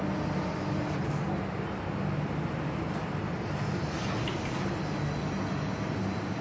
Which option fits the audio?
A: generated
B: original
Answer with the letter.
B